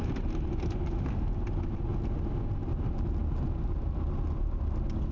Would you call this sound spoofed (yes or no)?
no